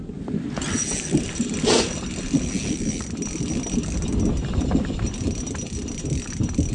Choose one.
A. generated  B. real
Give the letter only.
B